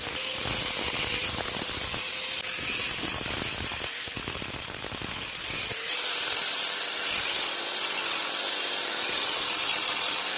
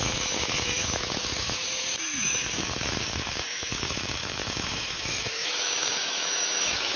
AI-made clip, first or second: second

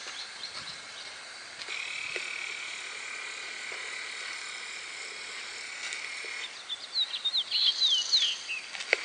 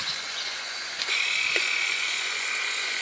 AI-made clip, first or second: second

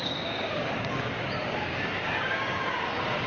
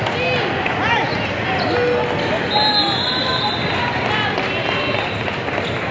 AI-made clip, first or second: first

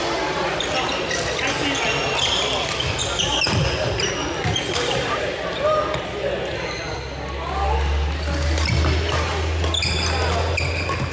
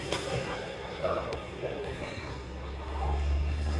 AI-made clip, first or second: second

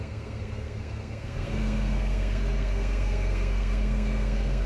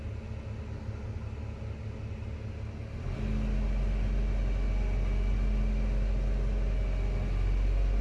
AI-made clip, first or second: first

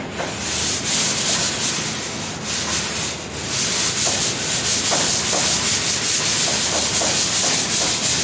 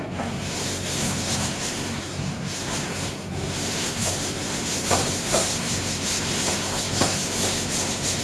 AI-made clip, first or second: second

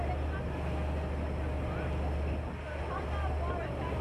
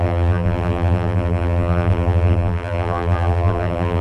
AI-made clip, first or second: second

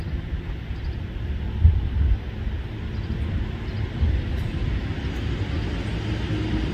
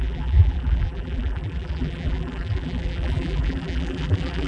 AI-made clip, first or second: second